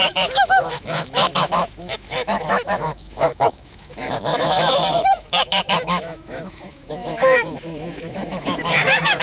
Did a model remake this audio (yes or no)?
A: yes